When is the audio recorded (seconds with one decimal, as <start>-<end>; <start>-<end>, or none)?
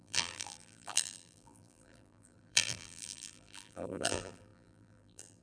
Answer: none